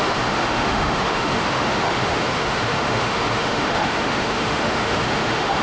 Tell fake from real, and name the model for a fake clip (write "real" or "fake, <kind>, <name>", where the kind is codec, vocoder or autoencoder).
fake, autoencoder, DAC-VAE